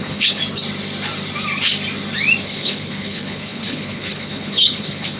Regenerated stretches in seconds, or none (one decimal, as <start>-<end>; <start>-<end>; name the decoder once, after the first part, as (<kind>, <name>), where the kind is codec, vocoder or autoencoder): 0.0-0.4 (codec, HILCodec); 2.4-5.2